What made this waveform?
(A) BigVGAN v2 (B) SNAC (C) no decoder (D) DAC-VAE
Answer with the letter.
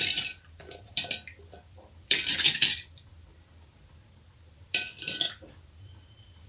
A